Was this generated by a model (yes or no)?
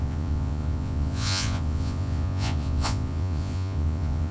yes